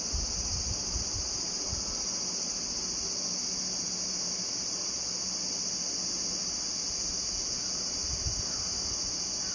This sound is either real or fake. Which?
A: real